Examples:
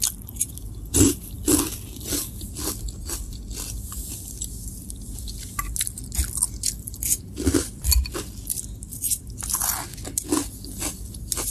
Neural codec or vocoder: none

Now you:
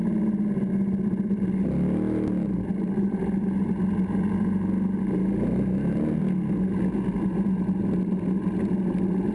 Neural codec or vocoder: none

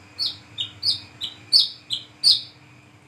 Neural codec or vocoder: none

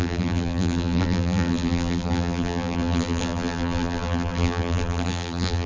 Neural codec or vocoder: vocoder, BigVGAN v2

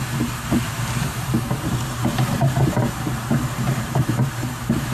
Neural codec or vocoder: vocoder, BigVGAN v2